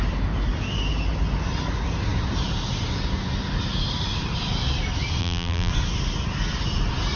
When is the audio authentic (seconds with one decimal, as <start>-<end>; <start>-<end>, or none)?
0.0-5.2; 5.7-7.2